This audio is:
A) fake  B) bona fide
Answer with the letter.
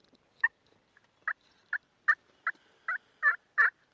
B